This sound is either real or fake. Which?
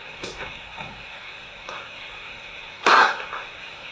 fake